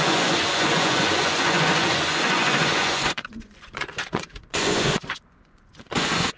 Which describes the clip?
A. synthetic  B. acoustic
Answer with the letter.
A